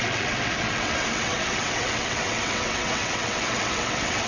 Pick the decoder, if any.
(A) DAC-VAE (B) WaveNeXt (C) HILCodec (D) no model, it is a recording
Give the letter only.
B